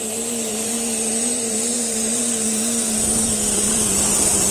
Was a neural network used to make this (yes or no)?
yes